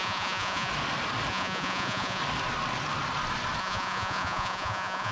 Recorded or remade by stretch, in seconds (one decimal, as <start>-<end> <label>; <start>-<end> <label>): 0.0-0.7 remade; 0.7-1.3 recorded; 1.3-2.2 remade; 2.2-3.6 recorded; 3.6-5.1 remade